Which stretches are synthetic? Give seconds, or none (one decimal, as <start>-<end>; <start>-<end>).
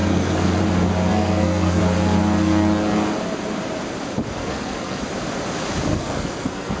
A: 0.0-0.6; 1.1-1.8; 4.4-5.0; 5.9-6.8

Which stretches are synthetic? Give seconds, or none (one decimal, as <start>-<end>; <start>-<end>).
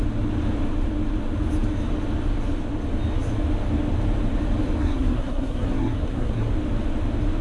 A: 4.8-6.5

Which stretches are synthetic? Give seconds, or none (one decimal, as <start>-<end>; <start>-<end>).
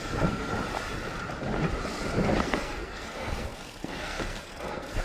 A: 0.0-0.5; 2.4-5.0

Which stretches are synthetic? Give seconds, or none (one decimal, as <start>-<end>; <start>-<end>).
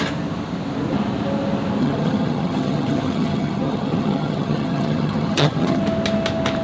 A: 1.8-5.8